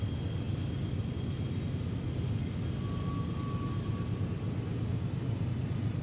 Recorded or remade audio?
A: recorded